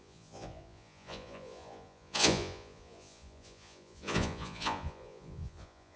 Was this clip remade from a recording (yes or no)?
yes